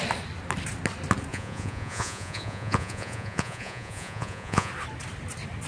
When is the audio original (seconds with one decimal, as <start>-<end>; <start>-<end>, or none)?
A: 0.0-1.3; 4.7-5.7